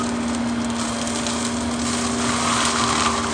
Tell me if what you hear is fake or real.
real